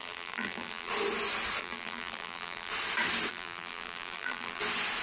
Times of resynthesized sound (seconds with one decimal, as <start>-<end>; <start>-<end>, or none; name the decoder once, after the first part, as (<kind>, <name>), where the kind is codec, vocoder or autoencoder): 0.0-0.9 (vocoder, BigVGAN v2); 1.6-2.7; 3.3-4.6